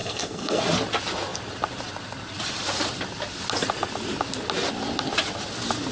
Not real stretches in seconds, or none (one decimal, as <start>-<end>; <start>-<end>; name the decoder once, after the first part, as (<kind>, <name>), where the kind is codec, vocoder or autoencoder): 0.0-0.6 (codec, SNAC)